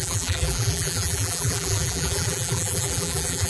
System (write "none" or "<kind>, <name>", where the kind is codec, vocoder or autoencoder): vocoder, BigVGAN v2